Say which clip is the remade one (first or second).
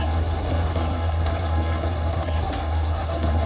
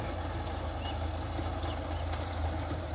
first